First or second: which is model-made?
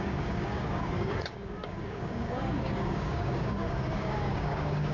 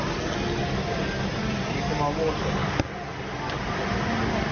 first